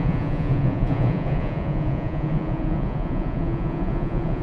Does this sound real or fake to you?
fake